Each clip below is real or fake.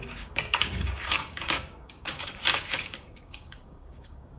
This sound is fake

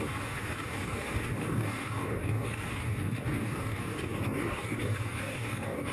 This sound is fake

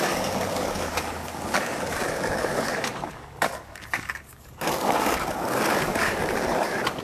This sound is fake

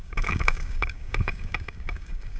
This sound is fake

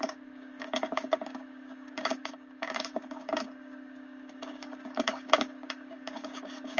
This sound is fake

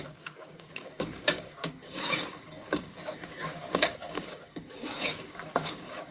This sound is fake